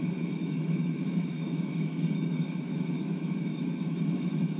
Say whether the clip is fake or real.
fake